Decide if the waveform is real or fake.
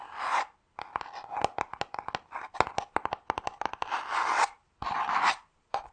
real